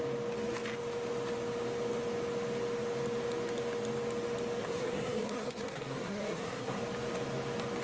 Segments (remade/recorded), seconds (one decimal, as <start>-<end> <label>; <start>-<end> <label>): 0.0-4.6 recorded; 4.6-6.8 remade; 6.8-7.8 recorded